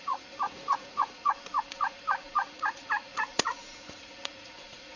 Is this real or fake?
fake